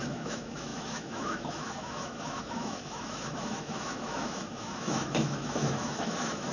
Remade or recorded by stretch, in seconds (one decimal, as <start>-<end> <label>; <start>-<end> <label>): 0.0-6.5 remade